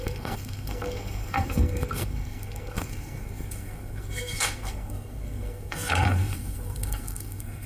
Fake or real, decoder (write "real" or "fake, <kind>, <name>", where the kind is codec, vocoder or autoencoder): fake, codec, SNAC